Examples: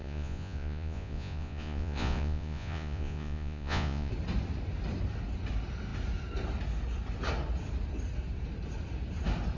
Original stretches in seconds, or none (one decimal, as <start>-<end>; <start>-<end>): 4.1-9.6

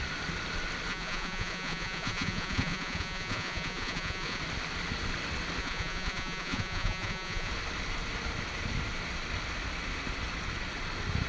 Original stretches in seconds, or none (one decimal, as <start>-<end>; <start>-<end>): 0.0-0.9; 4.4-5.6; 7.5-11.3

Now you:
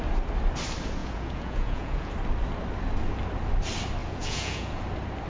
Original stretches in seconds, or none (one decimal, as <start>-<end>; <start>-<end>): 0.0-1.0; 2.1-4.0; 4.8-5.3